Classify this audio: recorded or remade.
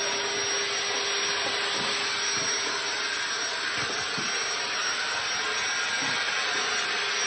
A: recorded